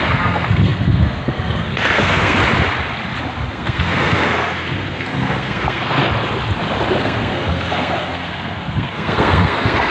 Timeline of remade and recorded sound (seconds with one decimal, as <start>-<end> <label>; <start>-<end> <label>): 0.0-2.4 remade; 2.4-3.5 recorded; 3.5-6.0 remade; 6.0-6.9 recorded; 6.9-9.9 remade